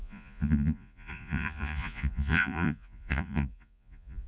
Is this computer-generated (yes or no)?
yes